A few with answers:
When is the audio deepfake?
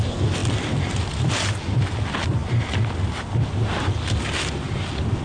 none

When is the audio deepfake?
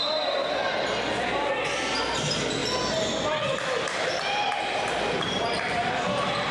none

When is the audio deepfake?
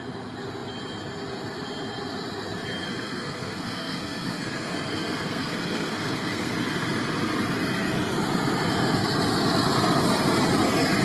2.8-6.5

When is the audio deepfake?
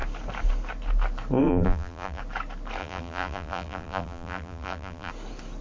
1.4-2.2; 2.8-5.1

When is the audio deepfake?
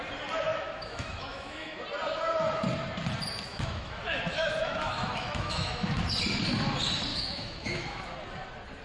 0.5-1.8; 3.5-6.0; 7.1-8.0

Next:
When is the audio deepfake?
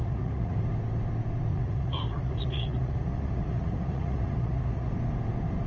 0.0-0.6; 1.5-4.9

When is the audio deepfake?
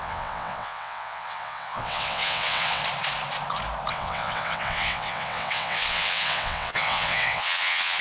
0.0-2.8; 3.9-8.0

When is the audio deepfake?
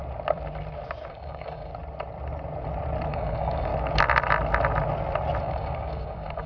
1.1-1.7; 3.1-3.7; 5.4-6.5